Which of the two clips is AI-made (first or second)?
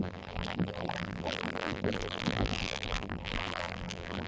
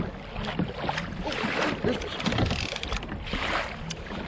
first